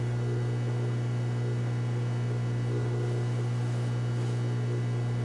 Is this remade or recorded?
recorded